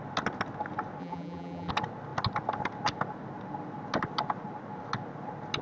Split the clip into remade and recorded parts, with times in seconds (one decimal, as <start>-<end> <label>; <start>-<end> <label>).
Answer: 0.0-1.0 recorded; 1.0-1.7 remade; 1.7-5.6 recorded